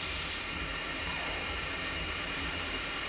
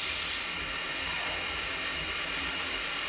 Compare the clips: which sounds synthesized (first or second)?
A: first